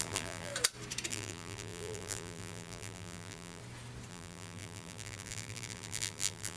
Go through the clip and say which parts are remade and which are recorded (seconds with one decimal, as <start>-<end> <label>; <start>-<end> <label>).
0.0-0.5 remade; 0.5-1.1 recorded; 1.1-3.6 remade; 3.6-4.1 recorded; 4.1-6.6 remade